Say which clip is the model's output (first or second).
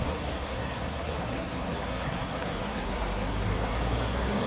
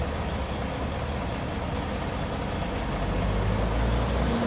first